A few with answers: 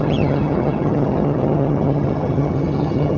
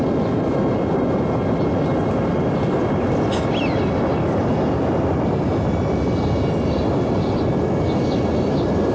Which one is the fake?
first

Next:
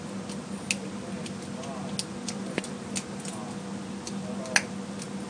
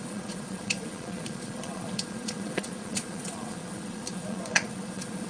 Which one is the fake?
second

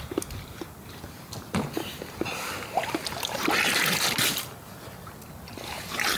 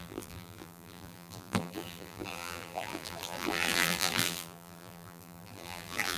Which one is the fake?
second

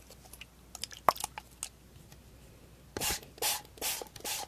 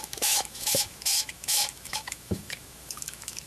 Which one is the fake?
second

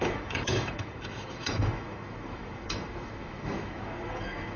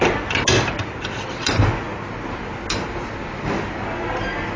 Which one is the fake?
first